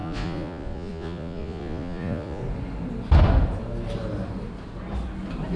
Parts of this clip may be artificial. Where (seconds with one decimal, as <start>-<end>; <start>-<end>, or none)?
0.0-2.4